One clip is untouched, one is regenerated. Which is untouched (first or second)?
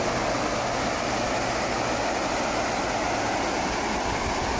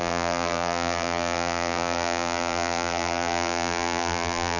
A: first